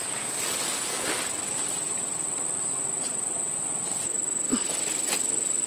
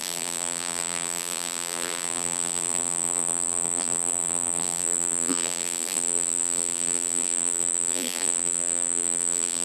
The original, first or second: first